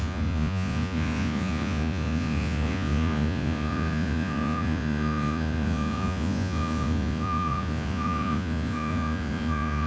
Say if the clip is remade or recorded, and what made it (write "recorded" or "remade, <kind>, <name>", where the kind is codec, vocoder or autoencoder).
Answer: remade, vocoder, Vocos